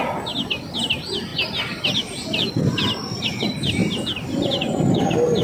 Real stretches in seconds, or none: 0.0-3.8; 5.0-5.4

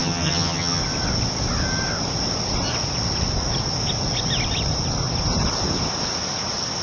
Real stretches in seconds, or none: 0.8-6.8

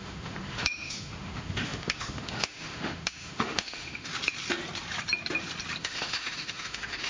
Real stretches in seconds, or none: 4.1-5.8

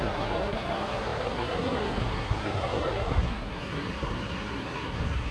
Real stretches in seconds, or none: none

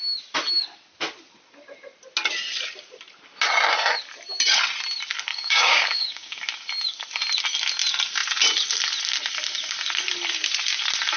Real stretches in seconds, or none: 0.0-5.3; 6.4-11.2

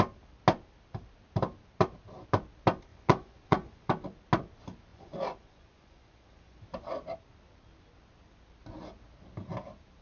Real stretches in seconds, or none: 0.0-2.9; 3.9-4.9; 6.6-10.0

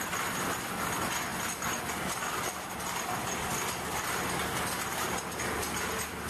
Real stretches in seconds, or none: 0.0-6.3